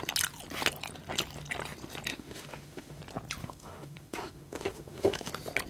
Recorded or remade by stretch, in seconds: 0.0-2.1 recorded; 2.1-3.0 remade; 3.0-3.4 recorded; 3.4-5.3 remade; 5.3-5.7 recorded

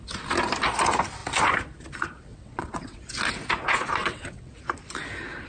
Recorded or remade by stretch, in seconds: 0.0-2.3 recorded; 2.3-3.0 remade; 3.0-4.0 recorded; 4.0-4.5 remade; 4.5-5.5 recorded

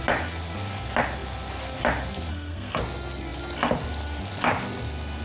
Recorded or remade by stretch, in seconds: 0.0-2.3 recorded; 2.3-2.8 remade; 2.8-5.2 recorded

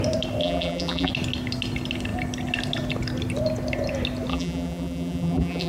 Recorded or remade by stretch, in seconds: 0.0-0.4 recorded; 0.4-1.1 remade; 1.1-4.3 recorded; 4.3-5.7 remade